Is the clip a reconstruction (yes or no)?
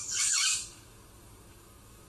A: yes